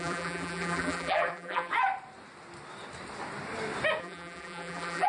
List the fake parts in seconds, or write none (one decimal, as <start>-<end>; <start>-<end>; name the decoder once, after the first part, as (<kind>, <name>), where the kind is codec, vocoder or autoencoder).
0.0-1.7 (vocoder, BigVGAN v2); 4.0-5.1